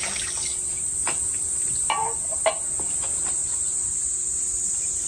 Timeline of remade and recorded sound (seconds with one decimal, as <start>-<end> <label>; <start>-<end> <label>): 0.0-5.1 recorded